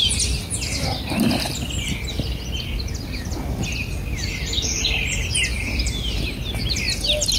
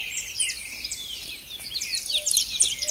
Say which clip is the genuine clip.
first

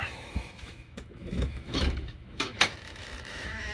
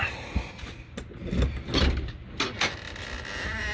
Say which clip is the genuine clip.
second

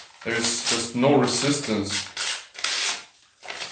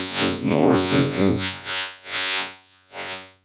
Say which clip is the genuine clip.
first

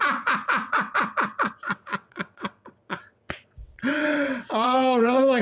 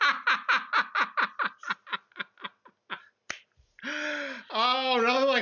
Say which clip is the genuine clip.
second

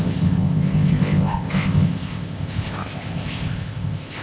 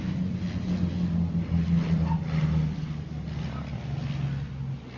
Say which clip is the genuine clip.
second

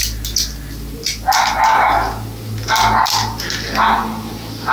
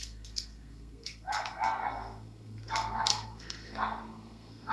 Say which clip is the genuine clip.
first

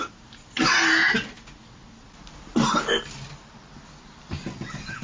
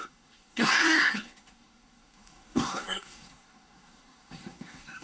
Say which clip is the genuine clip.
first